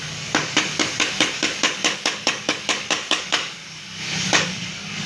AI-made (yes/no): yes